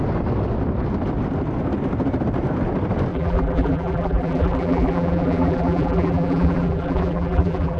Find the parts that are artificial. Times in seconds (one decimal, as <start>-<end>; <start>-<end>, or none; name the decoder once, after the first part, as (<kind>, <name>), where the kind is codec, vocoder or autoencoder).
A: 3.1-7.8 (vocoder, BigVGAN v2)